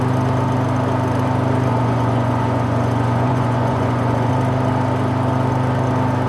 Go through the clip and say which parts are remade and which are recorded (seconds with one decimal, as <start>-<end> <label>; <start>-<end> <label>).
0.0-1.7 recorded; 1.7-4.3 remade; 4.3-6.3 recorded